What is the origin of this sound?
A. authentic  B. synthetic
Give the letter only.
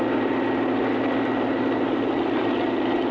A